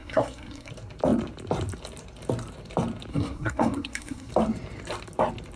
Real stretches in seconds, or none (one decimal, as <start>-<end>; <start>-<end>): 0.7-3.1; 4.3-5.6